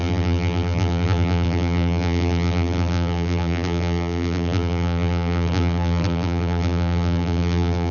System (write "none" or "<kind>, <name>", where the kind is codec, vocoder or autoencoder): vocoder, BigVGAN v2